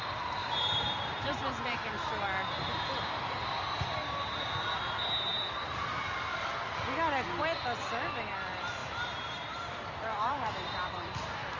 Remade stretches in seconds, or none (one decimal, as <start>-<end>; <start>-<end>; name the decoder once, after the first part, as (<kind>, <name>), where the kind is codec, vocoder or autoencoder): 0.4-1.4 (vocoder, BigVGAN v2); 5.3-6.1; 8.8-11.6